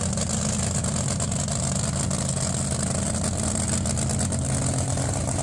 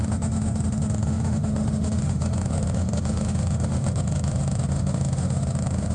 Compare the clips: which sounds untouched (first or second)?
first